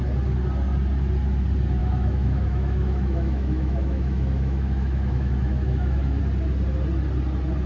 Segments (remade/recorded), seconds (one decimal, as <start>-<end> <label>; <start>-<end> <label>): 0.0-1.8 recorded; 1.8-6.2 remade; 6.2-7.7 recorded